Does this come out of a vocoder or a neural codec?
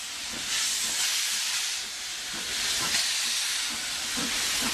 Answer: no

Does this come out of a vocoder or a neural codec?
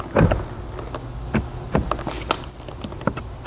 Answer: no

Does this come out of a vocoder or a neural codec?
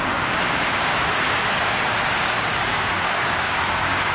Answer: yes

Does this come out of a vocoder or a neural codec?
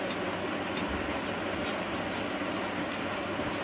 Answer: no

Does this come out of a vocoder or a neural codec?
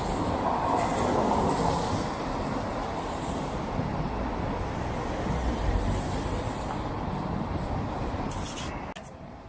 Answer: no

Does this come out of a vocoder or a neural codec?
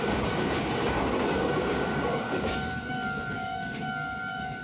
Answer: yes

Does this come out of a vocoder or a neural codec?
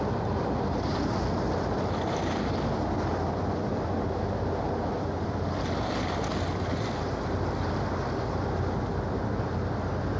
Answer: no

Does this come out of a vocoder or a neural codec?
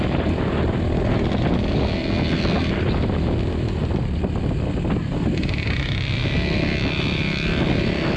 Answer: no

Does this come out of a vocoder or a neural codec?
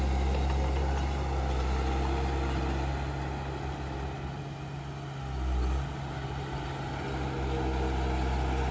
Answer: no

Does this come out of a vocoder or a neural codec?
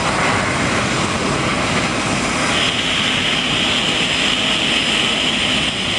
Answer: no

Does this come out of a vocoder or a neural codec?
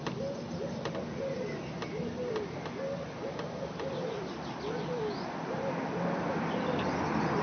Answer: no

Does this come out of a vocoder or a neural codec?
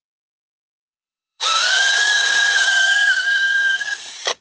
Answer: yes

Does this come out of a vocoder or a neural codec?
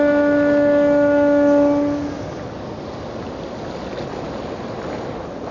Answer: no